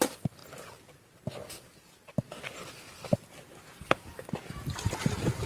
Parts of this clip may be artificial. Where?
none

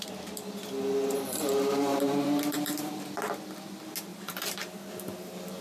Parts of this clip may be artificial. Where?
1.9-3.2 (vocoder, BigVGAN v2); 4.1-5.6

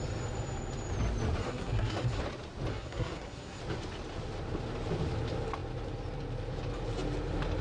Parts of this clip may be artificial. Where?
1.4-2.2 (codec, SNAC); 2.7-3.6

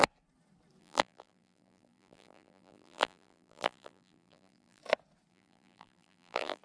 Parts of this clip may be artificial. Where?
0.8-4.8 (vocoder, BigVGAN v2); 5.3-6.6

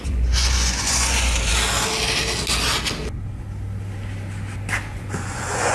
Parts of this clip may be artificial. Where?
0.0-1.5 (vocoder, Vocos); 4.9-5.7

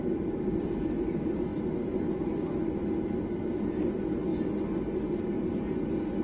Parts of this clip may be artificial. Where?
none